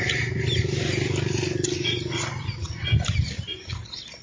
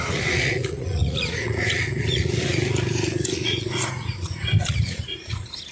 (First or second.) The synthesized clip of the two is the second